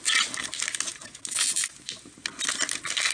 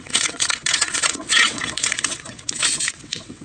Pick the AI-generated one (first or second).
second